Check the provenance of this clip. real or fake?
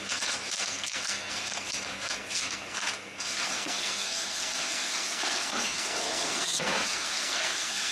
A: fake